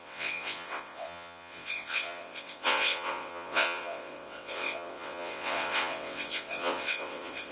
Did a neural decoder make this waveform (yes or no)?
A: yes